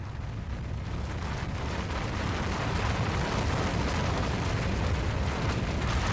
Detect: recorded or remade recorded